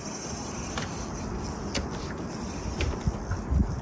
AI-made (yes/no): no